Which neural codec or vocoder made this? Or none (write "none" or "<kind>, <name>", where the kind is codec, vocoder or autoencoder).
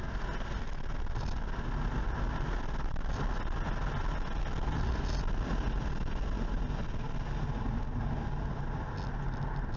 none